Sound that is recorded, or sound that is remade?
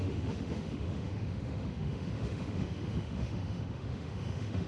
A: remade